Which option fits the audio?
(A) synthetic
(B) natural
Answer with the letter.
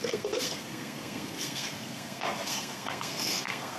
A